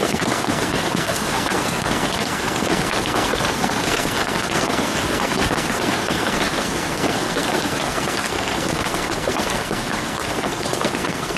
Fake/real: fake